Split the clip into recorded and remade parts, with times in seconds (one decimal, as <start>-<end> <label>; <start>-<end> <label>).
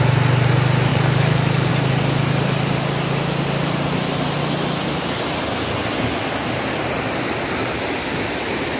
0.0-0.9 recorded; 0.9-1.7 remade; 1.7-8.8 recorded